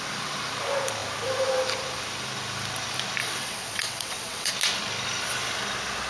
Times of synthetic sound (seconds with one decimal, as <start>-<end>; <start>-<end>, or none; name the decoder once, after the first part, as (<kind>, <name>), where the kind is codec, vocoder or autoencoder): 3.2-4.5 (vocoder, WaveNeXt)